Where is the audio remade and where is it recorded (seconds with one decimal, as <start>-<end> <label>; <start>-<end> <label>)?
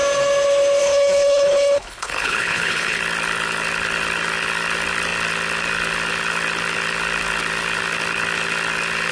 0.0-0.8 recorded; 0.8-3.0 remade; 3.0-9.1 recorded